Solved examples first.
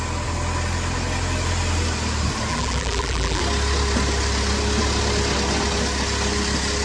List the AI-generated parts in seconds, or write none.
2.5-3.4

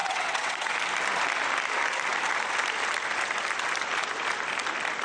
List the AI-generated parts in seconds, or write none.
0.0-0.7

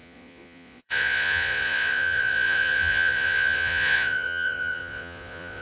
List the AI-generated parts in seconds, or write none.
0.0-5.6

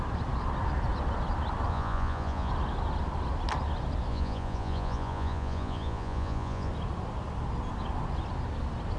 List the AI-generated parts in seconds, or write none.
1.7-2.5; 4.1-6.7

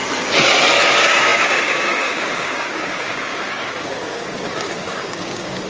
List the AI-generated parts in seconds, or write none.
0.9-5.7

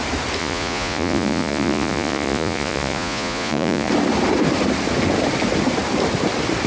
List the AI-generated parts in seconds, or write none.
0.4-3.9

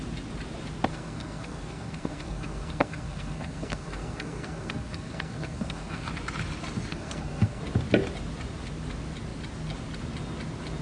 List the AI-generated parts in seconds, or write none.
0.9-6.1; 6.9-7.6

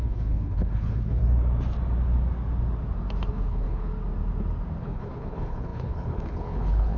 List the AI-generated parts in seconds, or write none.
0.0-1.2; 3.3-3.9; 4.8-7.0